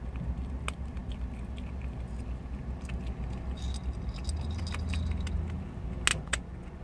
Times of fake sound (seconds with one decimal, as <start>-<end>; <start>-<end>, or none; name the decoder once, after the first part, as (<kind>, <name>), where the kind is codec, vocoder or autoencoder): 6.1-6.8 (vocoder, Vocos)